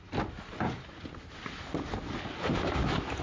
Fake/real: real